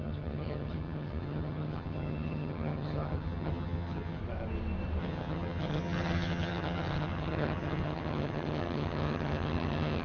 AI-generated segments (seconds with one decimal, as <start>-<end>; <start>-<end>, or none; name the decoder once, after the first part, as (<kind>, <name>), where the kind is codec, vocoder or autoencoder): 0.0-4.2 (vocoder, HiFi-GAN); 5.0-10.0

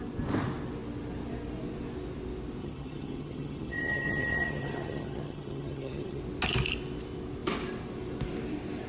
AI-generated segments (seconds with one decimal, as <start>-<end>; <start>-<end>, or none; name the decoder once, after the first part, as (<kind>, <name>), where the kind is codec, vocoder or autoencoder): 2.6-6.2 (vocoder, HiFi-GAN)

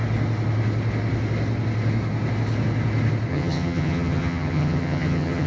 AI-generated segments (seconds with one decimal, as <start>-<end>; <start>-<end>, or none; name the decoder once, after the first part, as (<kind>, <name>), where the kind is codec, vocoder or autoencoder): 3.3-5.5 (vocoder, HiFi-GAN)

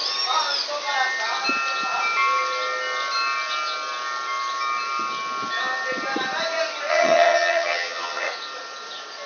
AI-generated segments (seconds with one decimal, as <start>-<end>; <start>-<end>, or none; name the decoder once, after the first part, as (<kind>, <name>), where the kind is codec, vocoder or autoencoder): 6.9-8.3 (vocoder, HiFi-GAN)

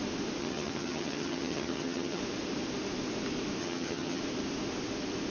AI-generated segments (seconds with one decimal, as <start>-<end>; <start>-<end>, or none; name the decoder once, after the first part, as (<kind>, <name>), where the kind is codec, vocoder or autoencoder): 0.4-2.2 (vocoder, HiFi-GAN); 3.6-4.2